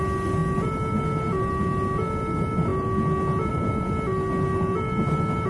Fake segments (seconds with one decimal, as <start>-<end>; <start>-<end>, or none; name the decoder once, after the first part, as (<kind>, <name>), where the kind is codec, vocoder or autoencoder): none